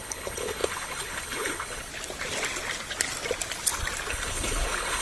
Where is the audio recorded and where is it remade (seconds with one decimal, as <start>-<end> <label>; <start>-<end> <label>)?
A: 0.0-1.9 remade; 1.9-4.1 recorded; 4.1-5.0 remade